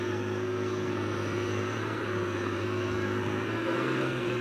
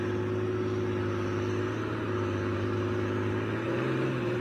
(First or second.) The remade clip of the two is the first